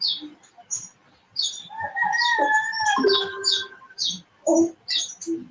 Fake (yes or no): no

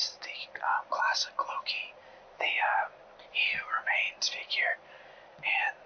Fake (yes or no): no